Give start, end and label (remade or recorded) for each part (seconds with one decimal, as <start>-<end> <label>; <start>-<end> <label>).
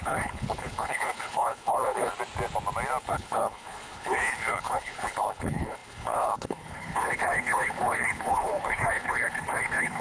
0.0-2.1 remade; 2.1-3.0 recorded; 3.0-10.0 remade